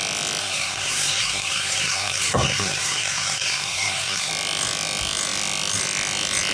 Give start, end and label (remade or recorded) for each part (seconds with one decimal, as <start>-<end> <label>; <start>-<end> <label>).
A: 0.0-0.4 recorded; 0.4-4.3 remade; 4.3-6.5 recorded